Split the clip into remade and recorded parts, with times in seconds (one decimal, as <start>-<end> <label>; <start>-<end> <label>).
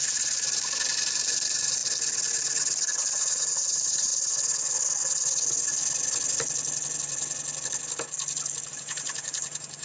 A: 0.0-1.8 remade; 1.8-3.0 recorded; 3.0-4.1 remade; 4.1-8.7 recorded; 8.7-9.8 remade